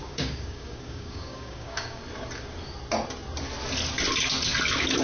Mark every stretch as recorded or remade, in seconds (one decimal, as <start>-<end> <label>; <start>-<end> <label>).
0.0-2.0 remade; 2.0-5.0 recorded